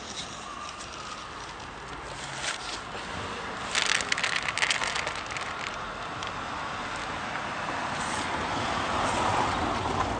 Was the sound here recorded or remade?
recorded